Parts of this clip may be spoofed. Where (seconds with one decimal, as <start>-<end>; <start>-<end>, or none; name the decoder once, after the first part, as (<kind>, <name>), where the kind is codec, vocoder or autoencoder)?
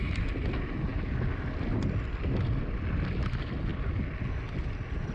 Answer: none